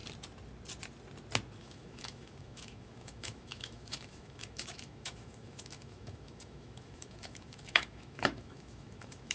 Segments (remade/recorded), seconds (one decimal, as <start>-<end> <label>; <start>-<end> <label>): 0.0-1.6 recorded; 1.6-9.3 remade